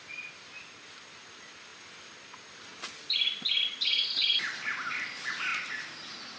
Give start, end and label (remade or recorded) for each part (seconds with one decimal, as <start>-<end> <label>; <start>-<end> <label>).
0.0-6.4 recorded